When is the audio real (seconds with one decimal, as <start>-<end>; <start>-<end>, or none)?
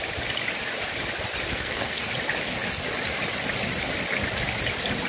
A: 0.0-1.5; 2.1-5.1